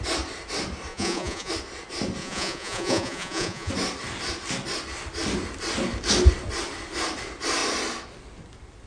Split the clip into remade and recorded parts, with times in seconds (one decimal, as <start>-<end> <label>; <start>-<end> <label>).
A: 0.0-0.9 recorded; 0.9-1.5 remade; 1.5-2.2 recorded; 2.2-3.7 remade; 3.7-8.9 recorded